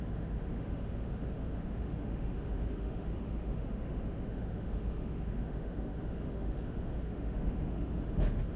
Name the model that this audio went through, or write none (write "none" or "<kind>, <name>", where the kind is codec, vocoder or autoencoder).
autoencoder, DAC-VAE